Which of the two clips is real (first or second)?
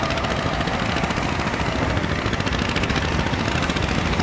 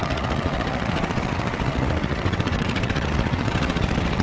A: first